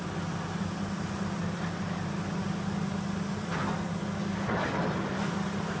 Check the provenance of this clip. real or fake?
real